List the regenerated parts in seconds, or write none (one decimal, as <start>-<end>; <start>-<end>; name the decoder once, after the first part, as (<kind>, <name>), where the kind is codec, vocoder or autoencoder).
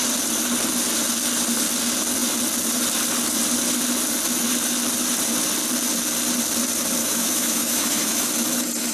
7.0-8.3 (autoencoder, DAC-VAE)